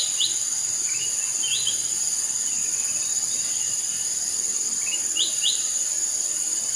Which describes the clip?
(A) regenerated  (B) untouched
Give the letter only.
B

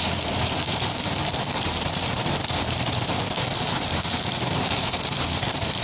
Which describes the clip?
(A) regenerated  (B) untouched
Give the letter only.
A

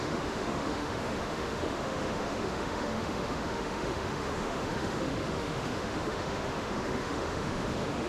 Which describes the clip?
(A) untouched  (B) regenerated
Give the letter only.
B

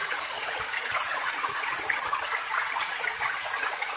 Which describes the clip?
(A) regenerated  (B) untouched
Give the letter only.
A